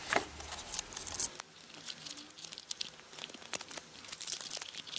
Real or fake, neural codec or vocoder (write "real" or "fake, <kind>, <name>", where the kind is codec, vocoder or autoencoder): real